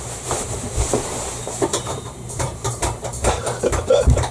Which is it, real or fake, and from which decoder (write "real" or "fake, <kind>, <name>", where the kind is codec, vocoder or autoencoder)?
fake, vocoder, BigVGAN v2